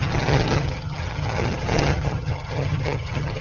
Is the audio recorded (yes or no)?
no